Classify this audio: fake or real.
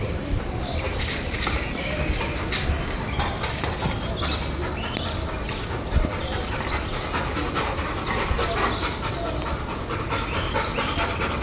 real